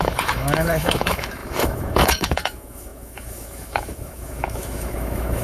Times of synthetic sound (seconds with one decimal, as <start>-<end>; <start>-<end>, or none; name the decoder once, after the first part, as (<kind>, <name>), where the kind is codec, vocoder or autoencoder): 0.0-5.4 (autoencoder, DAC-VAE)